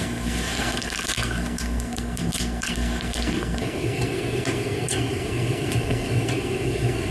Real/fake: fake